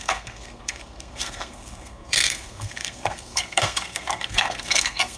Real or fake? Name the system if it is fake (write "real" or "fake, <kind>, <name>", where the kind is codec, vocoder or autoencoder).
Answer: fake, codec, SNAC